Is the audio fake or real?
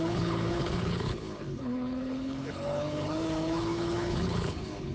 fake